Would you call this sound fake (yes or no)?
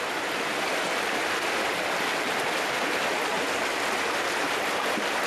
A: no